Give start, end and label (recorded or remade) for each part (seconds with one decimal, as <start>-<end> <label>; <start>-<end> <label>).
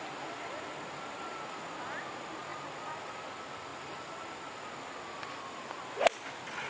0.0-6.7 recorded